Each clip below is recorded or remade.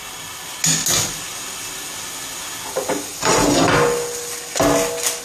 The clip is recorded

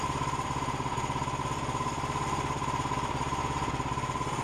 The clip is recorded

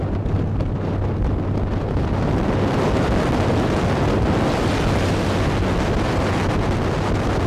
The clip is recorded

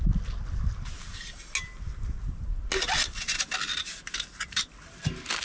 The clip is recorded